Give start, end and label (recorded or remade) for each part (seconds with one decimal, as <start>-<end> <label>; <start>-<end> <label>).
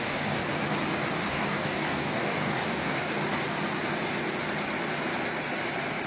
0.0-0.4 remade; 0.4-1.3 recorded; 1.3-3.2 remade; 3.2-6.1 recorded